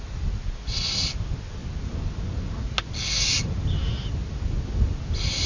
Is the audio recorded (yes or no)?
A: yes